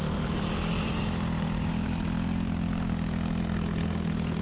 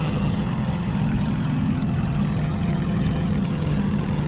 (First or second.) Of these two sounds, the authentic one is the first